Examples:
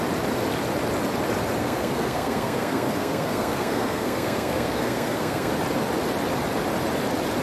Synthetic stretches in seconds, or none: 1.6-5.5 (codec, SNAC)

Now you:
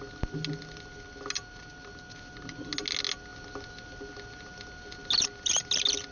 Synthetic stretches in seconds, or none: none